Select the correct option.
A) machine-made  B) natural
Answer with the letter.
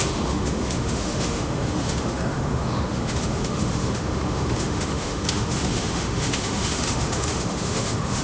A